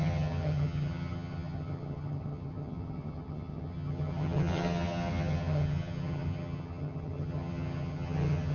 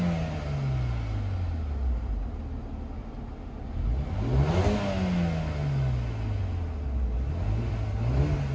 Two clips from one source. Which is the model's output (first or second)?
first